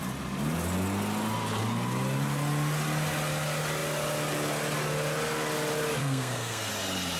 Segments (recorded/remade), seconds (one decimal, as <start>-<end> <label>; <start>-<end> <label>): 0.0-6.0 recorded; 6.0-6.7 remade; 6.7-7.2 recorded